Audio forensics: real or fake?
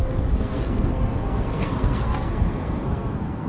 fake